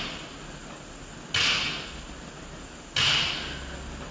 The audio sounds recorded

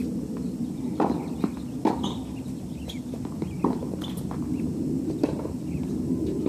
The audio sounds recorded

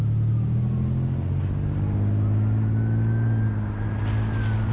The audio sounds recorded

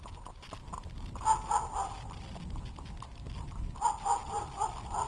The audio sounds recorded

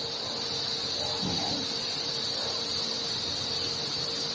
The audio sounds recorded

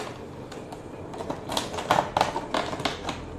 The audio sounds recorded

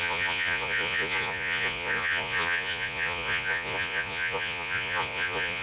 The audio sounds remade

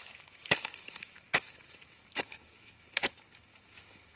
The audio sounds remade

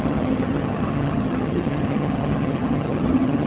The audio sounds remade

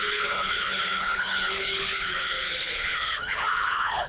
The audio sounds remade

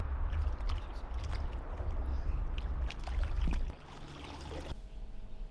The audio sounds recorded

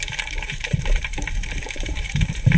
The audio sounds remade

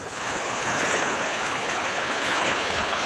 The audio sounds remade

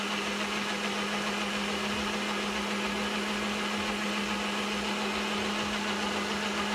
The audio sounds recorded